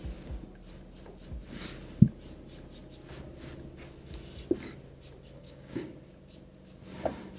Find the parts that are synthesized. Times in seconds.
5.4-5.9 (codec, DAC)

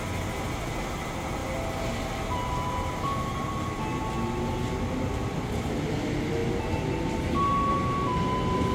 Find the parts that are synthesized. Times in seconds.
none

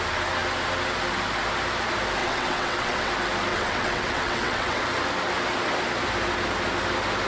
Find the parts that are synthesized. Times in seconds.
2.2-3.1 (vocoder, WaveNeXt); 3.5-4.8

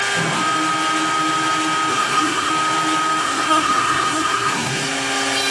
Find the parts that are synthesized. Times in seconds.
1.9-2.5 (codec, SNAC); 3.2-4.8

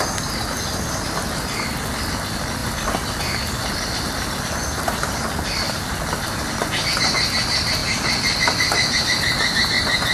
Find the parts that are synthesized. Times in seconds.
none

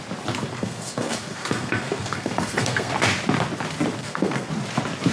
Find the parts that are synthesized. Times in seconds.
0.5-2.9 (codec, SNAC); 4.0-4.5